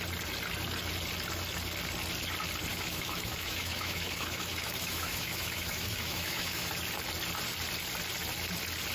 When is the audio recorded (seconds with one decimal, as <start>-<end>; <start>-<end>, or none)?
0.0-2.7; 6.7-8.9